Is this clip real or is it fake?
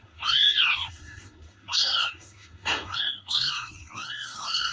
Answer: fake